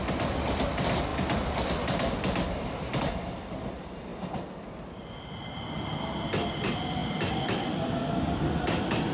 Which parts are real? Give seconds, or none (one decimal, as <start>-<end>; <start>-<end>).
0.0-9.1

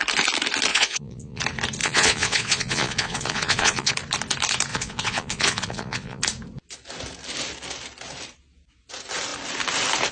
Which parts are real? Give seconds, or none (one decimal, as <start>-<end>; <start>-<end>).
0.0-0.7; 1.4-1.8; 3.9-4.7; 6.2-10.1